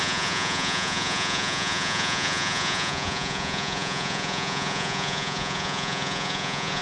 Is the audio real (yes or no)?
no